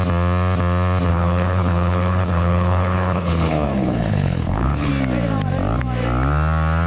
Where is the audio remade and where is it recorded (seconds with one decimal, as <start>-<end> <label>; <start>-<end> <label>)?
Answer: 0.0-1.1 recorded; 1.1-4.9 remade; 4.9-6.9 recorded